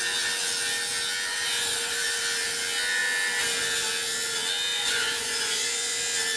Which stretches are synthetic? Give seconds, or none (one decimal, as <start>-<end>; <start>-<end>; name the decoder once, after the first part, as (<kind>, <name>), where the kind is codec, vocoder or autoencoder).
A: 1.3-2.2 (vocoder, Vocos); 4.7-6.0